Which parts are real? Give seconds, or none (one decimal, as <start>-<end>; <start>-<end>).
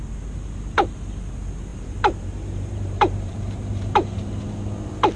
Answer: 0.0-1.7; 4.4-5.2